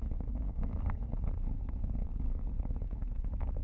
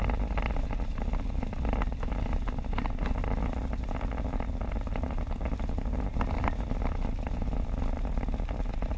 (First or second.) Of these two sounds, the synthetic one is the first